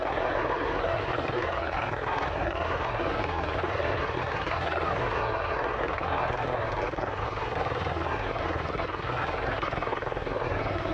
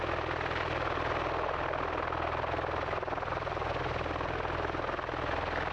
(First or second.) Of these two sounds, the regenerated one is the first